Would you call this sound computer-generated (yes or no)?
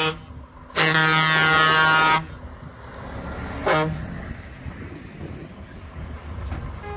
no